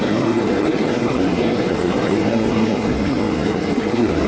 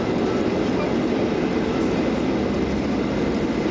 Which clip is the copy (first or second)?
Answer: first